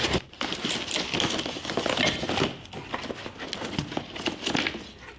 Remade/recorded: recorded